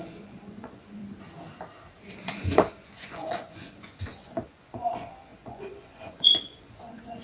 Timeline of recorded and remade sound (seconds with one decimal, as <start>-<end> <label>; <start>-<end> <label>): 0.0-1.0 remade; 1.0-2.1 recorded; 2.1-7.2 remade